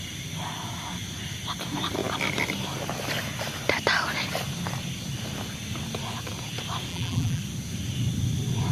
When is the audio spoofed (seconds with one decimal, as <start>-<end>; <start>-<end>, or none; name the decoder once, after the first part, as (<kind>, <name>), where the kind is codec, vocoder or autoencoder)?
6.9-7.4 (vocoder, BigVGAN v2)